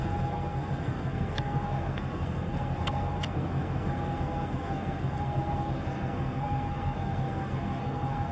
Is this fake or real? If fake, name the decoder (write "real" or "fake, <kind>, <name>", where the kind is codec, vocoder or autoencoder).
fake, codec, SNAC